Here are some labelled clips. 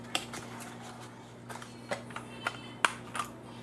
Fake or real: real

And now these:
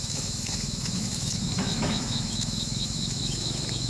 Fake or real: fake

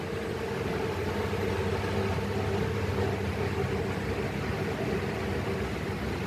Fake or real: real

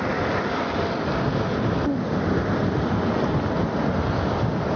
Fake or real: real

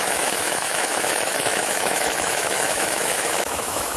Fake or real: fake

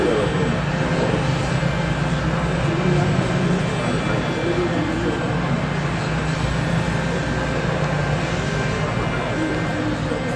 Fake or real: real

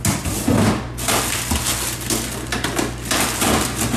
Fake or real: real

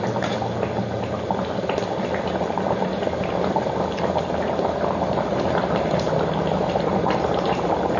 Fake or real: real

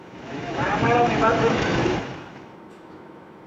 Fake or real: fake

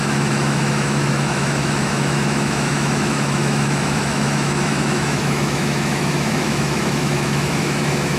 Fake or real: fake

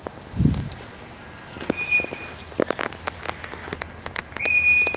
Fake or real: real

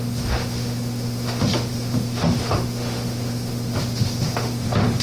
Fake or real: fake